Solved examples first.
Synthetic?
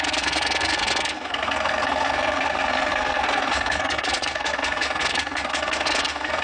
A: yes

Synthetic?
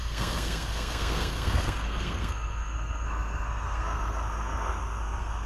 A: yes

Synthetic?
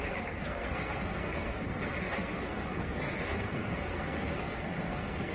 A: yes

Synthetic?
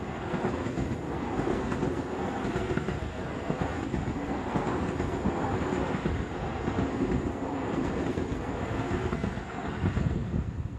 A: yes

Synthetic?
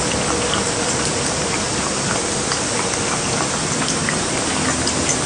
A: no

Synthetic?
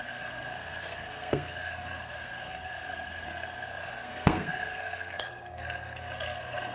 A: yes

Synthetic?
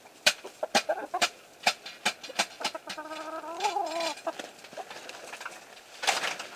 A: no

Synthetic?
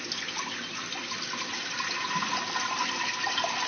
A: no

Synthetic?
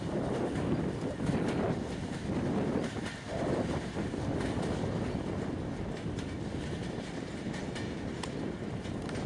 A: no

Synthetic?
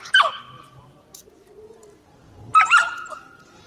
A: no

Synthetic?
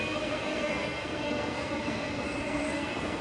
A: yes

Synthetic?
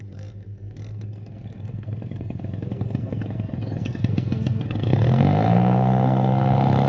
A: yes